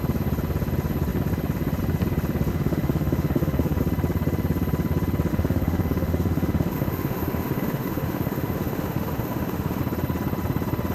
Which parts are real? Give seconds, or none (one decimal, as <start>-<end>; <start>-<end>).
0.0-2.5; 3.8-5.3; 9.8-10.9